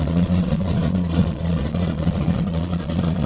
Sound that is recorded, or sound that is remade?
remade